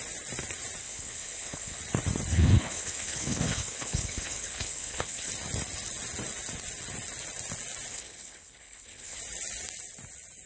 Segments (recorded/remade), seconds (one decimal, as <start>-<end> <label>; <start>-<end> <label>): 0.0-0.8 recorded; 0.8-1.8 remade; 1.8-2.3 recorded; 2.3-5.3 remade; 5.3-7.9 recorded; 7.9-9.2 remade; 9.2-10.5 recorded